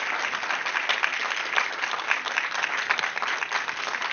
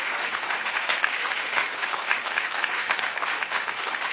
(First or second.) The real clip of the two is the first